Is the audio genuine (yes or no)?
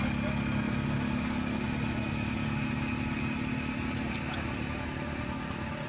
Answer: yes